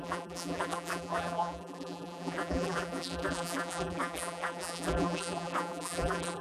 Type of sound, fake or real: fake